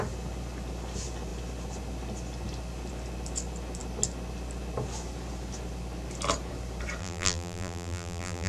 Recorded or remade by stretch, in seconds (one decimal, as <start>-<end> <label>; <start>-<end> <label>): 0.0-7.0 recorded; 7.0-8.5 remade